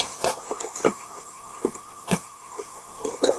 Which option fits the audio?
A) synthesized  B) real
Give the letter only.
A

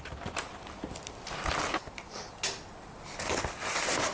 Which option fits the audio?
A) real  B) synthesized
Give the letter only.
A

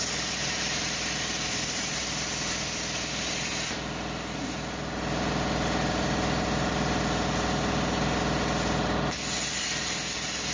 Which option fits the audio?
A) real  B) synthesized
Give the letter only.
A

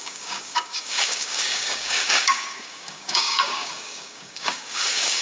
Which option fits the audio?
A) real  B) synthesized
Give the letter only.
B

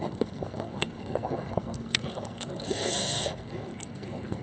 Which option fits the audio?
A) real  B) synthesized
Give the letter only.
B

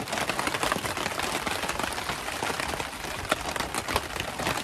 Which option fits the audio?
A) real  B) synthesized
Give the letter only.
A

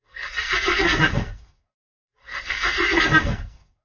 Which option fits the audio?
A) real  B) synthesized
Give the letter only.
B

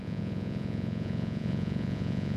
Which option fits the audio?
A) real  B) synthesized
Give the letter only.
B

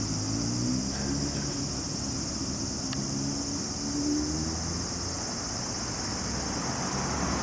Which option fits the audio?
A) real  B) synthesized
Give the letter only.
A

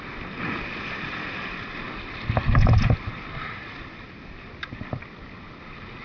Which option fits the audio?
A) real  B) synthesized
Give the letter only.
A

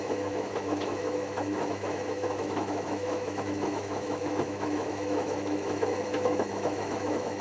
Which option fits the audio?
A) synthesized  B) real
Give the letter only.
A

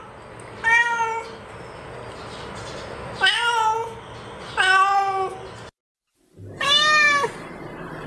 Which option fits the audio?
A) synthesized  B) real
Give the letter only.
B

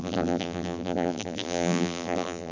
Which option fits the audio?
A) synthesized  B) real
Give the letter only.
A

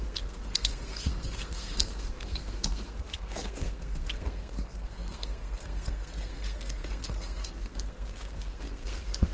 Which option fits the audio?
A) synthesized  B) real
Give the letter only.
A